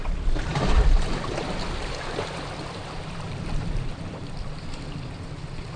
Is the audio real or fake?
fake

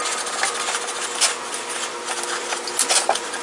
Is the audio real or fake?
real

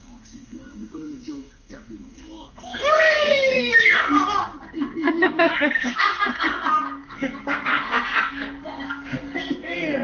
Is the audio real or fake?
fake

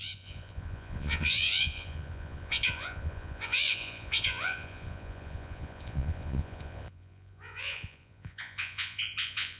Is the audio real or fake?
fake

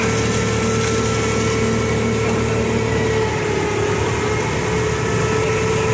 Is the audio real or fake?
real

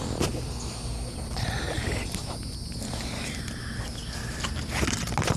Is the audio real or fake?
real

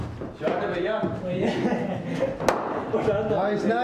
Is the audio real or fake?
real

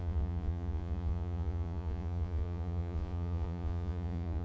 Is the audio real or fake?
fake